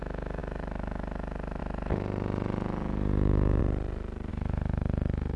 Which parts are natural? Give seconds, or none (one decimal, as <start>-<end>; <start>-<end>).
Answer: 3.6-4.3